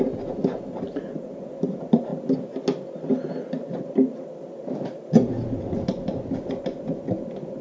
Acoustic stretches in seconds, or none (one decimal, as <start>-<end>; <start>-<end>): 0.0-7.6